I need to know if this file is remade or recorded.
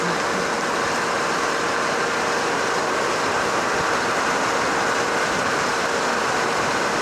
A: recorded